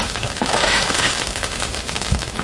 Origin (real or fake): fake